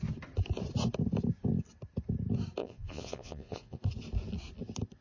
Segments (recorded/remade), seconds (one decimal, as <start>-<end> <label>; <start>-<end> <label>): 0.0-2.6 recorded; 2.6-3.8 remade; 3.8-5.0 recorded